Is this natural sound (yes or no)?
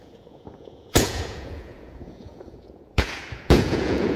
no